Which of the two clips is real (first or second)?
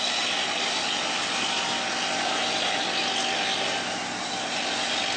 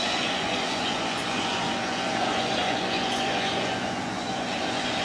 first